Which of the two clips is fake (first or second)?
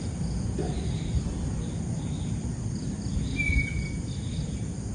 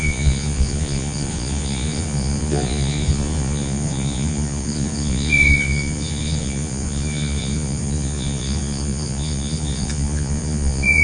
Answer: second